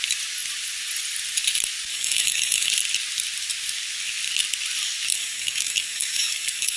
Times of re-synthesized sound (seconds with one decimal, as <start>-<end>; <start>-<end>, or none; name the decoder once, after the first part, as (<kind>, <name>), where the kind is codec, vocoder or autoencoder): 1.9-2.7 (codec, DAC); 5.1-6.8